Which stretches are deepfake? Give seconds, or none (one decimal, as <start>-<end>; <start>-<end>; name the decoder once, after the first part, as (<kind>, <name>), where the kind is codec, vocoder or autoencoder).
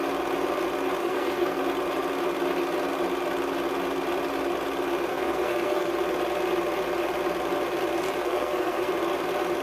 1.0-1.6 (codec, SNAC); 5.1-5.9; 8.2-8.9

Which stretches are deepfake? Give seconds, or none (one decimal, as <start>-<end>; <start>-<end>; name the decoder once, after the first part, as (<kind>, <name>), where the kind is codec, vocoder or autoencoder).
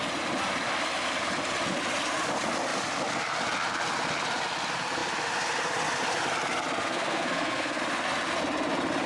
6.8-7.8 (codec, SNAC)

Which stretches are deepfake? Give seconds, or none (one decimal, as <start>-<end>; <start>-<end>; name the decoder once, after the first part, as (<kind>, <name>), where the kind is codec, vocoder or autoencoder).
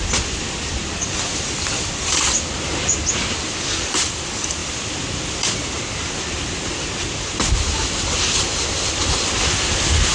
none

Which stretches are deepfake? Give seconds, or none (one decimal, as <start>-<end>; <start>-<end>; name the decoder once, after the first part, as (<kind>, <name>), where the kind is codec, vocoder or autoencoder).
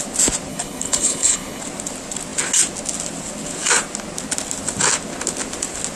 0.5-1.6 (codec, HILCodec)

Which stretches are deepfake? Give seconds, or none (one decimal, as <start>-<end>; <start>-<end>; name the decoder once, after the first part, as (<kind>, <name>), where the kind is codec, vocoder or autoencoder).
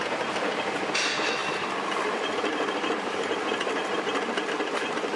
none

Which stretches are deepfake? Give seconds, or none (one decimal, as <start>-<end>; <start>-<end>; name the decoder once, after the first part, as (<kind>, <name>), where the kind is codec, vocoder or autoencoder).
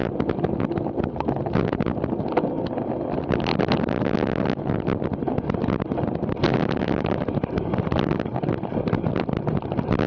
6.4-10.1 (vocoder, BigVGAN v2)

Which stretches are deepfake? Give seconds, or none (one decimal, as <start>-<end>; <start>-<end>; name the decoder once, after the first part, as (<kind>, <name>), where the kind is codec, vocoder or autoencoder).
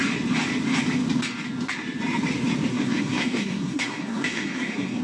2.7-5.0 (codec, SNAC)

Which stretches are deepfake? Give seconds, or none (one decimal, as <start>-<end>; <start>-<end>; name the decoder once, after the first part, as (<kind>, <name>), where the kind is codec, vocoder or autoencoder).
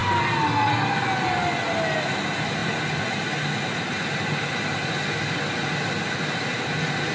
none